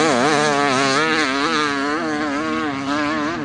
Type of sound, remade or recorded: recorded